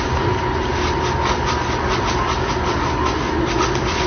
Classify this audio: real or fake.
real